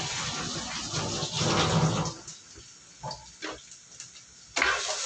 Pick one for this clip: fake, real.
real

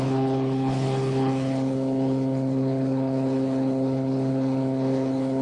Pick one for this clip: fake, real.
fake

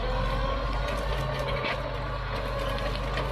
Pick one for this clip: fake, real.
real